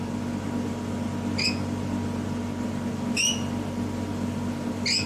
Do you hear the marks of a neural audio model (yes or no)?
no